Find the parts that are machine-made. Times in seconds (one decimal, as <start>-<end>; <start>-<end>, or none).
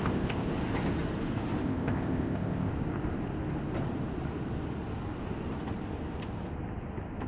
0.0-0.5; 1.6-2.7